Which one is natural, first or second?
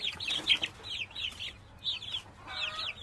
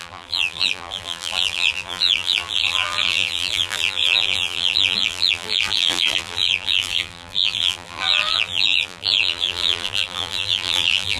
first